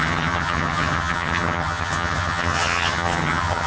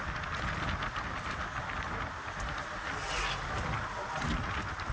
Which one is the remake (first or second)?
first